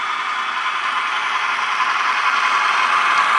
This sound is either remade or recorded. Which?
recorded